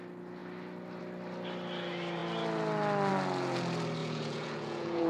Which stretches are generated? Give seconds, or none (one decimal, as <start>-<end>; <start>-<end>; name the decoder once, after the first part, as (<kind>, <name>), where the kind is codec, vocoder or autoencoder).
4.0-5.1 (vocoder, Vocos)

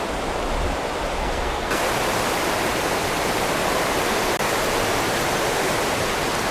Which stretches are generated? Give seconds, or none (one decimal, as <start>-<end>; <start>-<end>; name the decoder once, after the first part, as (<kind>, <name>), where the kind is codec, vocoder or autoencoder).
1.2-1.8 (codec, SNAC)

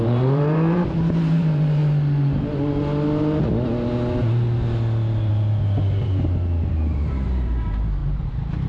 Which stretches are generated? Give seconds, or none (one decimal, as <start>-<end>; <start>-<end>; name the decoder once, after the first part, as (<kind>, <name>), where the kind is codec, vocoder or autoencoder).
0.0-1.8 (vocoder, BigVGAN v2); 5.3-8.7

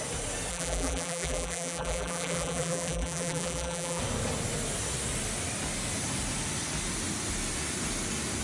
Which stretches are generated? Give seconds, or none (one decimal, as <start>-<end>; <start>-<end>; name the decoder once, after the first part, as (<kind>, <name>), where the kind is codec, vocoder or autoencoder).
0.5-4.0 (vocoder, BigVGAN v2)

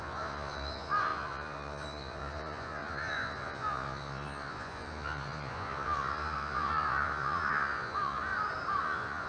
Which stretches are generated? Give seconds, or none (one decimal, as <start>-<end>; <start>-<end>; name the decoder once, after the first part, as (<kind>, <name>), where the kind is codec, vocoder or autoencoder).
0.0-8.3 (vocoder, Vocos); 8.8-9.3

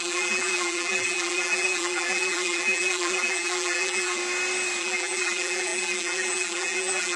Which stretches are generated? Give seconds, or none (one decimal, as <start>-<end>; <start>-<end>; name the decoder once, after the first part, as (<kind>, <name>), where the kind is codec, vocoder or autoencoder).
0.0-4.2 (vocoder, BigVGAN v2); 4.8-7.2